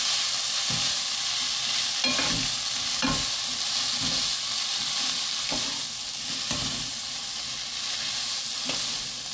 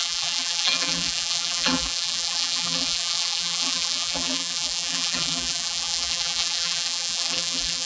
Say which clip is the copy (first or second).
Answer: second